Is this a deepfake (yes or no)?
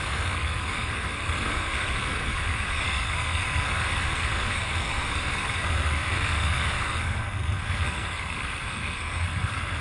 yes